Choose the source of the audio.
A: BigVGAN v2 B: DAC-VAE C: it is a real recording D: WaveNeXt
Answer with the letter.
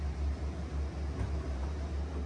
C